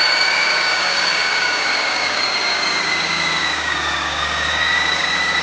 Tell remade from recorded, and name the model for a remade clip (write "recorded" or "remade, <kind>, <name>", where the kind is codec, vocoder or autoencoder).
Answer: remade, codec, DAC